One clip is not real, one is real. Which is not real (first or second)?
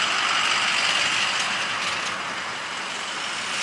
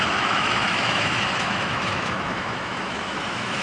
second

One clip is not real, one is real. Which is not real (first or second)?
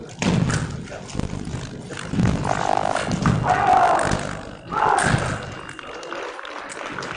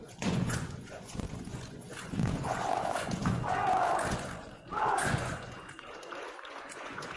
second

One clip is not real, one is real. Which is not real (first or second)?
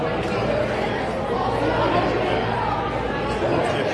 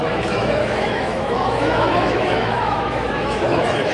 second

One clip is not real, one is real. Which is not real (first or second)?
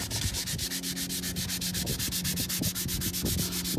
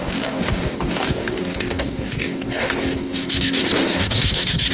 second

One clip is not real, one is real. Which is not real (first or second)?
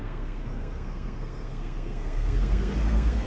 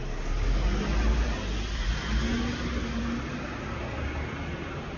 first